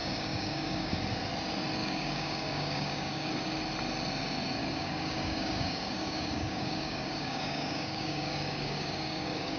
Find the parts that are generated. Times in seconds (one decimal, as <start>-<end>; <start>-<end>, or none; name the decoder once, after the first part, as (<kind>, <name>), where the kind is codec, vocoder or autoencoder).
0.0-0.9 (codec, DAC); 1.8-3.3; 4.6-9.6